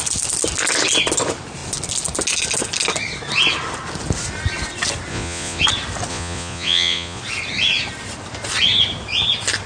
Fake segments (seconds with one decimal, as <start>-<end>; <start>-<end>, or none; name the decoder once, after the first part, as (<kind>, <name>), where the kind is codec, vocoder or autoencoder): 5.1-5.6 (vocoder, Vocos); 6.1-7.2

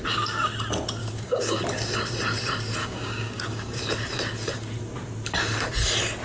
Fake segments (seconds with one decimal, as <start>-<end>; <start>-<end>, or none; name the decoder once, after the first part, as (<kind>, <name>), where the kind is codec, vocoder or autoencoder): 1.0-1.6 (codec, DAC); 2.8-3.8

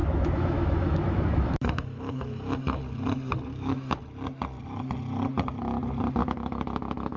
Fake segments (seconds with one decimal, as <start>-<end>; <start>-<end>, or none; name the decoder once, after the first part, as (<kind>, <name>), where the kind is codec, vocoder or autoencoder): 0.0-2.8 (autoencoder, DAC-VAE); 3.5-4.0; 6.2-7.2

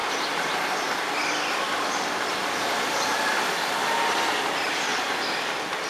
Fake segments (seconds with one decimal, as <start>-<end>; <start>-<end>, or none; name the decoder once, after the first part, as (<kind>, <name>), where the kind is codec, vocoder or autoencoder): none

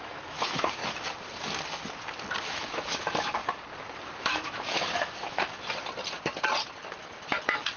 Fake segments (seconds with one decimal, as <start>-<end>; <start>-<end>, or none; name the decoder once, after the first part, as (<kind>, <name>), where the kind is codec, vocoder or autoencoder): 0.0-0.8 (autoencoder, DAC-VAE); 2.4-3.4; 4.2-5.5

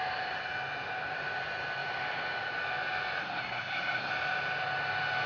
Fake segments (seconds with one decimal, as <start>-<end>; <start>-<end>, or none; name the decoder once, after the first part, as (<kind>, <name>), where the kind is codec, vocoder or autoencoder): 3.2-4.1 (codec, SNAC)